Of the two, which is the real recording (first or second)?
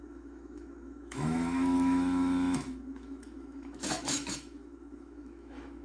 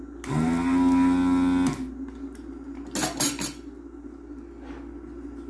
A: second